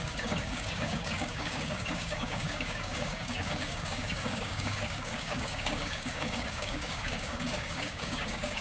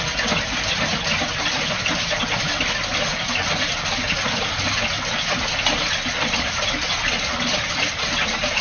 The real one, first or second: second